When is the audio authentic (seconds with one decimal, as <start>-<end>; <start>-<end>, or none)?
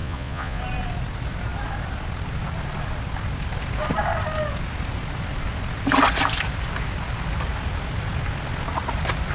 0.6-9.3